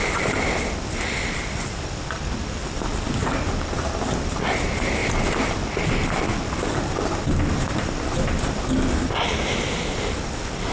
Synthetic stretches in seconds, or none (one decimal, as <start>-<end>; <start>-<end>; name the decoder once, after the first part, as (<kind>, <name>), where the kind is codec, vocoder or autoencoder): none